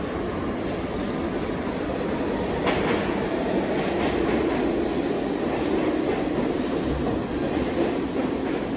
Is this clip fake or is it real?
real